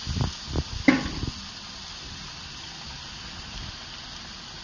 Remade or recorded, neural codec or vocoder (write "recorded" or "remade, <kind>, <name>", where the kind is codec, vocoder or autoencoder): recorded